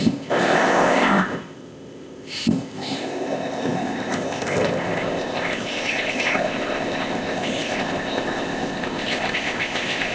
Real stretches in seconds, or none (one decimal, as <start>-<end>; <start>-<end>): none